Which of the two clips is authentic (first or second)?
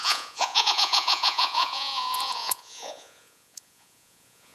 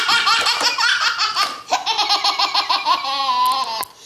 second